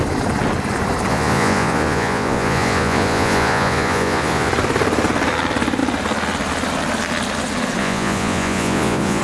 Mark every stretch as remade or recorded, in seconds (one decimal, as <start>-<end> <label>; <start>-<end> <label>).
0.0-1.1 recorded; 1.1-4.5 remade; 4.5-7.8 recorded; 7.8-9.2 remade